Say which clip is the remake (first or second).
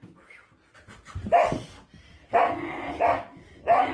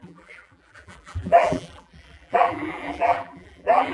second